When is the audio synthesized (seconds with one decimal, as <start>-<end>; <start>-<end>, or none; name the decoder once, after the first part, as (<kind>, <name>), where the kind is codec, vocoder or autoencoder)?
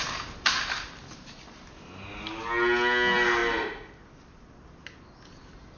none